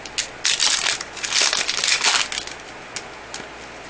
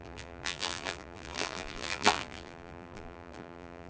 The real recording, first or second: first